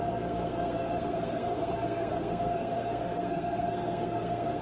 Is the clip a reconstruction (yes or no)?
yes